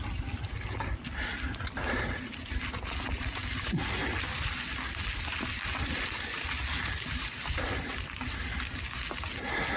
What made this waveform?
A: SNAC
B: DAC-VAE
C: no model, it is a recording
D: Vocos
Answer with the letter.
C